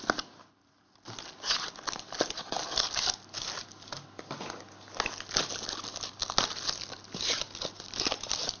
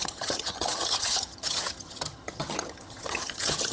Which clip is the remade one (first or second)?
second